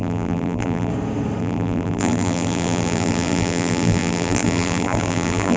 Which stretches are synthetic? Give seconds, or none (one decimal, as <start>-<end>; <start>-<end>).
0.0-0.9; 1.4-5.6